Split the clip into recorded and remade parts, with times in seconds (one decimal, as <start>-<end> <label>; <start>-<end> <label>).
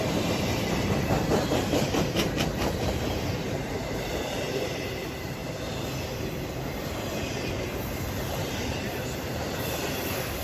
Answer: 0.0-5.4 remade; 5.4-7.5 recorded; 7.5-10.4 remade